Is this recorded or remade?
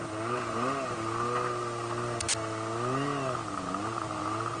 recorded